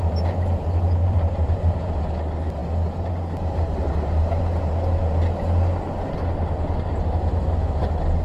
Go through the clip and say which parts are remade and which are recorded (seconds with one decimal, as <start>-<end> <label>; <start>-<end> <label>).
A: 0.0-1.0 recorded; 1.0-2.0 remade; 2.0-8.2 recorded